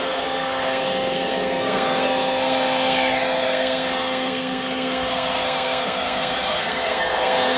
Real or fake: fake